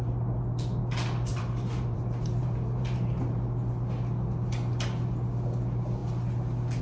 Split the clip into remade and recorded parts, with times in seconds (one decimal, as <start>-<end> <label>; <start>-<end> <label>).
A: 0.0-1.3 recorded; 1.3-3.2 remade; 3.2-6.8 recorded

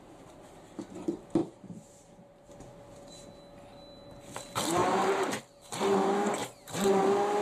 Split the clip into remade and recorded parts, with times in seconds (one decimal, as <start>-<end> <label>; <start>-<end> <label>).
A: 0.0-1.4 recorded; 1.4-2.5 remade; 2.5-4.8 recorded; 4.8-5.4 remade; 5.4-6.4 recorded; 6.4-7.0 remade; 7.0-7.4 recorded

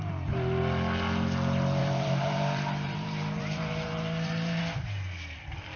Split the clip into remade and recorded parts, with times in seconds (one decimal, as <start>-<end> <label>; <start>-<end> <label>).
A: 0.0-1.8 recorded; 1.8-4.6 remade; 4.6-5.8 recorded

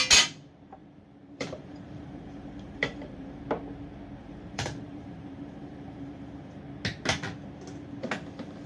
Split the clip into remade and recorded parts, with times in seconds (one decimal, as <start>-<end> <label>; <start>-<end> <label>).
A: 0.0-0.8 recorded; 0.8-3.4 remade; 3.4-4.2 recorded; 4.2-6.6 remade; 6.6-8.7 recorded

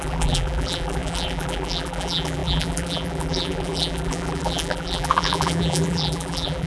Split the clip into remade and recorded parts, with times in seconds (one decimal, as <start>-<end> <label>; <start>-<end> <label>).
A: 0.0-6.7 remade

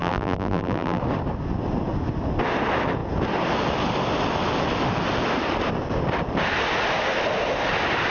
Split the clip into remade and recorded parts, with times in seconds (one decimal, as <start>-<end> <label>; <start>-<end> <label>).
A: 0.0-1.0 remade; 1.0-8.1 recorded

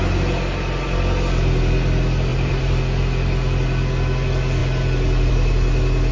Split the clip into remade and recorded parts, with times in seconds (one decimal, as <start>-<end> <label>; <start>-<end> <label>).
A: 0.0-2.3 recorded; 2.3-2.8 remade; 2.8-6.1 recorded